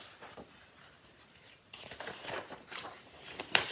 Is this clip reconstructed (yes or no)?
yes